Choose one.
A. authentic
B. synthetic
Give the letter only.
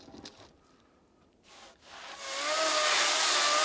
A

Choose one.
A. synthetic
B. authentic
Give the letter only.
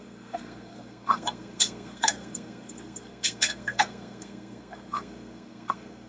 A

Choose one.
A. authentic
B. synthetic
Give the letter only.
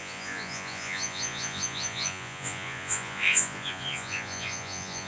B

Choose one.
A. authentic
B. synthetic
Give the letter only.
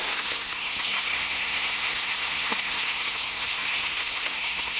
B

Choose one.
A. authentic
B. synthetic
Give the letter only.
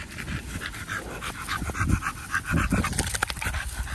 A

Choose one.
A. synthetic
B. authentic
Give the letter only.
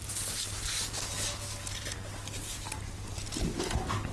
B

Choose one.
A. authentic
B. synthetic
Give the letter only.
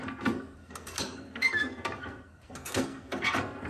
B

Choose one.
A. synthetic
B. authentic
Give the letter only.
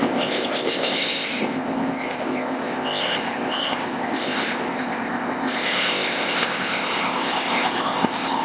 A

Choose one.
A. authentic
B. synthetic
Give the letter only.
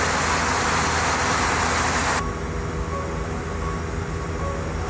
A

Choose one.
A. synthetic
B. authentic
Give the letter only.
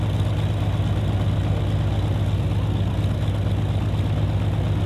B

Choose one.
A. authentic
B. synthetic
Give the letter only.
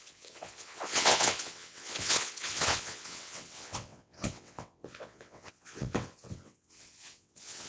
B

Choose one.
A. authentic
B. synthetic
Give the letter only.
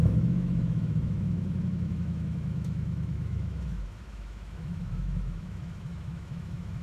B